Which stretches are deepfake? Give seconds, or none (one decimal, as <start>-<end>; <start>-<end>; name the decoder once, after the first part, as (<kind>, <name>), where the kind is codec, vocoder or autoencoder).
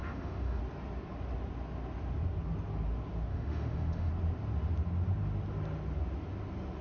0.0-0.6 (autoencoder, DAC-VAE); 3.3-4.1